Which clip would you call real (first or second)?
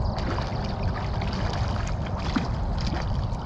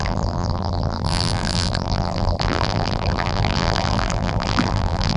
first